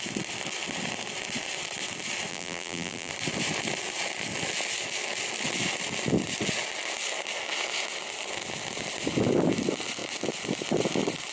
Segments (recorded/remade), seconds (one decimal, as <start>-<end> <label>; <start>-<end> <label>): 0.0-2.3 recorded; 2.3-3.1 remade; 3.1-11.3 recorded